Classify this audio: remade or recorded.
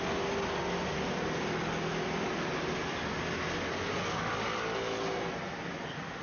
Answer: recorded